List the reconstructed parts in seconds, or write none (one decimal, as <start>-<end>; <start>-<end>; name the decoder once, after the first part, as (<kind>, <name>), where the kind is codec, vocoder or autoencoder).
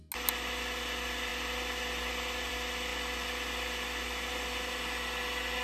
none